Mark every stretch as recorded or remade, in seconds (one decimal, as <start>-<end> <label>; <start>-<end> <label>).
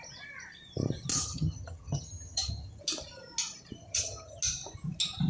0.0-1.1 recorded; 1.1-2.8 remade; 2.8-3.8 recorded; 3.8-4.4 remade; 4.4-5.3 recorded